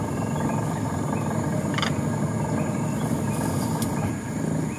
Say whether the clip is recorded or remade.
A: recorded